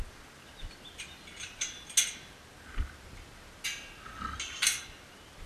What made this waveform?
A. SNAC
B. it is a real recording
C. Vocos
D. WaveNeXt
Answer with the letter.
B